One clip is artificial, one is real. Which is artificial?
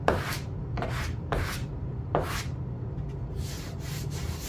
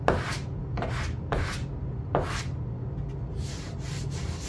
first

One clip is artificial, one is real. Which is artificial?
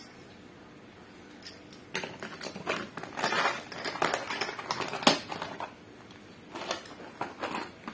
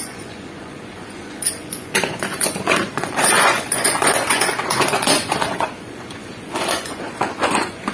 second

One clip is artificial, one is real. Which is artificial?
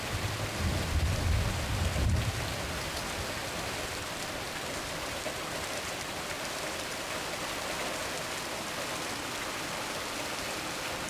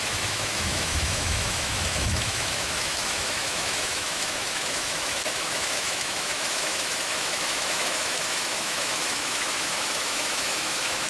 second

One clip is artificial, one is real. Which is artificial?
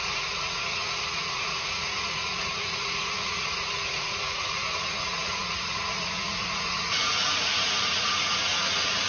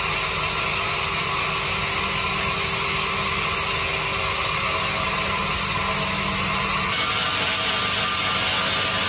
first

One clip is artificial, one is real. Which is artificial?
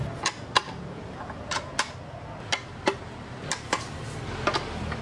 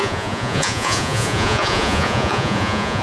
second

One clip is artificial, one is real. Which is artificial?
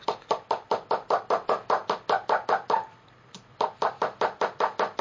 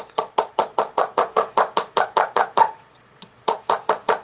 second